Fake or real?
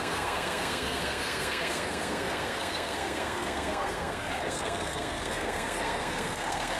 fake